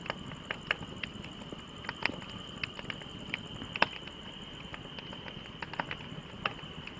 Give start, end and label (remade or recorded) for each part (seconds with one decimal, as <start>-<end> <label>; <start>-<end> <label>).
0.0-7.0 recorded